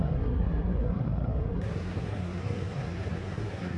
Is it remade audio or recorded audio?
remade